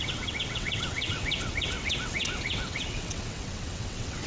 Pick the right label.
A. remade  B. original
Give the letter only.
A